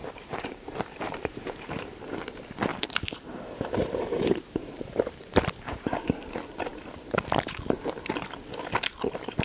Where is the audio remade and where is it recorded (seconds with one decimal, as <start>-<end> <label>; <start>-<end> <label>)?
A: 0.0-2.1 remade; 2.1-2.7 recorded; 2.7-5.9 remade; 5.9-9.4 recorded